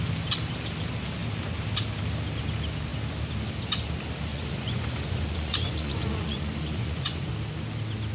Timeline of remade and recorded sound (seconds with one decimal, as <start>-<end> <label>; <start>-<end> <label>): 0.0-4.3 recorded; 4.3-7.3 remade; 7.3-8.1 recorded